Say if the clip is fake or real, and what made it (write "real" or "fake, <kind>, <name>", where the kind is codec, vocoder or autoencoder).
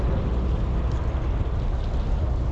real